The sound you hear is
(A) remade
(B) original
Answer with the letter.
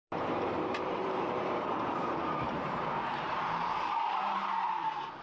A